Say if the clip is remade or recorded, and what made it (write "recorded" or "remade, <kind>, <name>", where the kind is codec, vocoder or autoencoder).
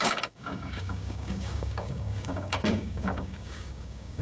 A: remade, codec, DAC